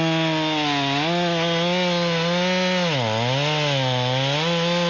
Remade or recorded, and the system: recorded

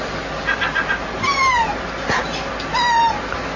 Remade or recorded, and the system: recorded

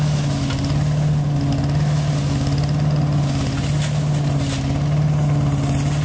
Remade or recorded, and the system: recorded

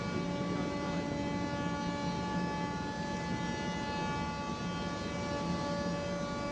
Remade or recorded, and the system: recorded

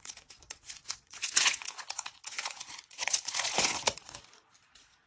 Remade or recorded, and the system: remade, vocoder, Vocos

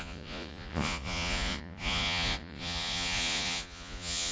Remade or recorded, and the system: remade, vocoder, Vocos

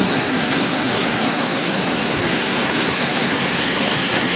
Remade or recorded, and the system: remade, codec, SNAC